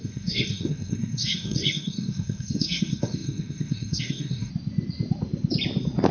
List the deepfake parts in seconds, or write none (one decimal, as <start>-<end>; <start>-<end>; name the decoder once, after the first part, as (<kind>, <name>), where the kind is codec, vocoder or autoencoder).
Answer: 0.0-4.5 (codec, SNAC)